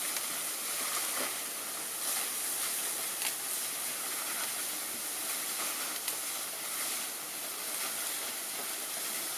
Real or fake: real